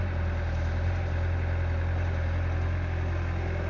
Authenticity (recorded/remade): recorded